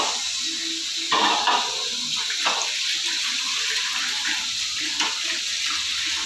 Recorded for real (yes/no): yes